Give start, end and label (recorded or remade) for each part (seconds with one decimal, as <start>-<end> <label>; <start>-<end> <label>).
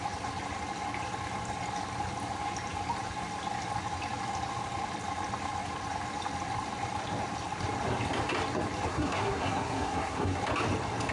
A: 0.0-8.9 recorded; 8.9-10.4 remade; 10.4-11.1 recorded